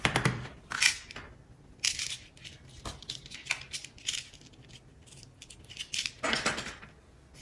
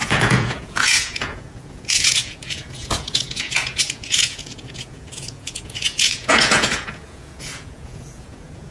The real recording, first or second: first